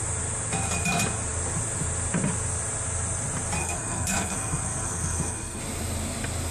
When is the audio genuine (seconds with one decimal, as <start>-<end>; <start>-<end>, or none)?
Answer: 0.0-3.6; 5.6-6.5